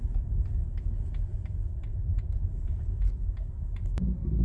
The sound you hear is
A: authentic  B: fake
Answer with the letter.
A